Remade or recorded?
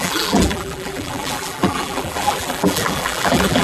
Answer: remade